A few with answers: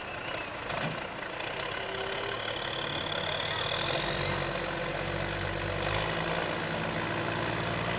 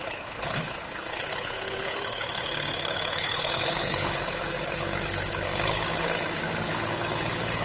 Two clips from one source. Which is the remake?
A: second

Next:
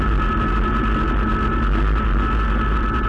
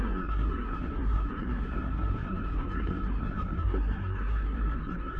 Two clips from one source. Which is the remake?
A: second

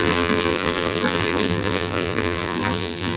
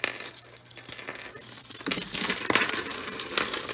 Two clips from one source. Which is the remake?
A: first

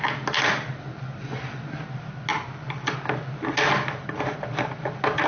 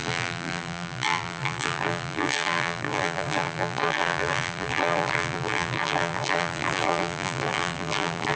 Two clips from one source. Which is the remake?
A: second